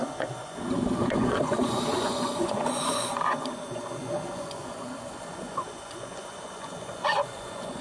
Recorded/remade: remade